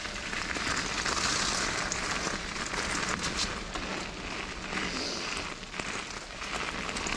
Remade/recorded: recorded